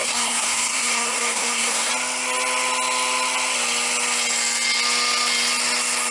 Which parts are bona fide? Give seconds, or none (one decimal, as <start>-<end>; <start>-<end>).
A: 1.9-6.1